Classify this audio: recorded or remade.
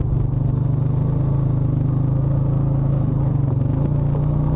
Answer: recorded